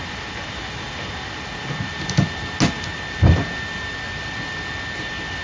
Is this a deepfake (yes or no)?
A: no